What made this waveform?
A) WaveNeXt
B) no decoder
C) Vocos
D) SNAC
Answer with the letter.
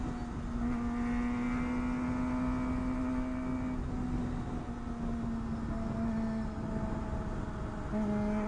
B